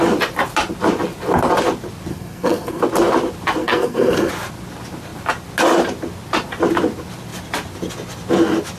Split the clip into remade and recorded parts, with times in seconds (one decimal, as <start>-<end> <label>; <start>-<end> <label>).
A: 0.0-2.1 recorded; 2.1-2.8 remade; 2.8-3.6 recorded; 3.6-4.3 remade; 4.3-8.8 recorded